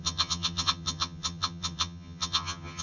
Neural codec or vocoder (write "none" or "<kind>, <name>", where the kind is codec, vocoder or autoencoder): vocoder, HiFi-GAN